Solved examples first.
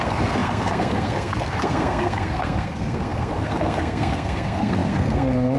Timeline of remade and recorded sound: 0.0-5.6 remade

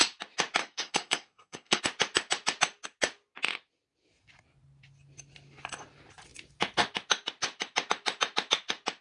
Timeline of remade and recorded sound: 0.0-0.6 recorded; 0.6-1.8 remade; 1.8-9.0 recorded

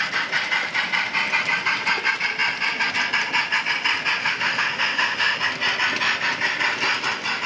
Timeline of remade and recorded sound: 0.0-4.2 recorded; 4.2-5.4 remade; 5.4-7.5 recorded

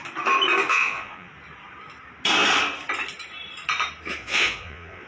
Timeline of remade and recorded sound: 0.0-0.7 recorded; 0.7-1.3 remade; 1.3-4.2 recorded; 4.2-5.1 remade